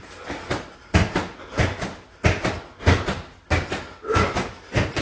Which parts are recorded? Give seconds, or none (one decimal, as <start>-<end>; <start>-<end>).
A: 0.0-5.0